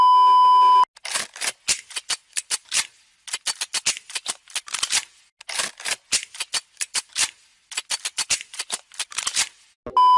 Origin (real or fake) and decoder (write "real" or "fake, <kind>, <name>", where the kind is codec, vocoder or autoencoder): real